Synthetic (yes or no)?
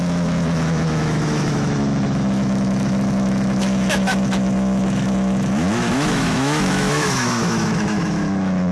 yes